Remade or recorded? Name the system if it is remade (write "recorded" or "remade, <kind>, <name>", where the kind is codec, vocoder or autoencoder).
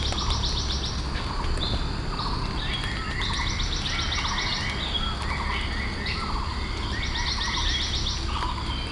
recorded